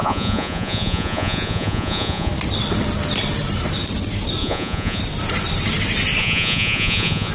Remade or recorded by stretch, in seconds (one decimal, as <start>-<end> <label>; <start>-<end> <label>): 0.0-2.3 remade; 2.3-4.4 recorded; 4.4-5.0 remade; 5.0-6.2 recorded; 6.2-7.3 remade